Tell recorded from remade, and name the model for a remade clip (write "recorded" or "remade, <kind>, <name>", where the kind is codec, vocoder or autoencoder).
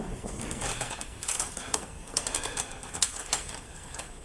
remade, codec, SNAC